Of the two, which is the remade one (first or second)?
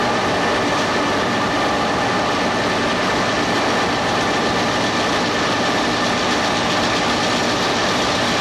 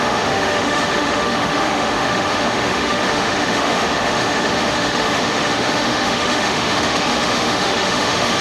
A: second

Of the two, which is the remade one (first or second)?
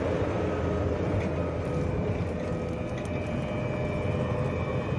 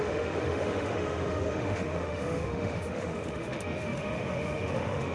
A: second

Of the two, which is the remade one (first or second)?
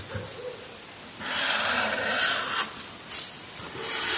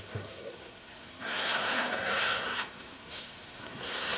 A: second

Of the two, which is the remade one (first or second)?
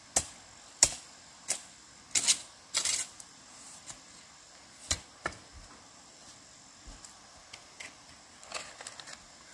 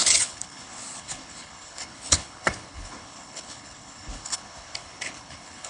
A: second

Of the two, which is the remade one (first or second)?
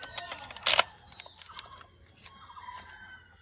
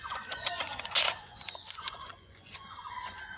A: second